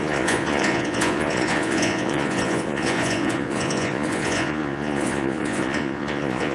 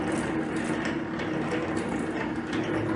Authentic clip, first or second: second